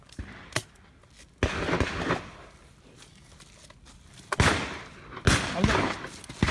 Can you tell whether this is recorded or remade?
recorded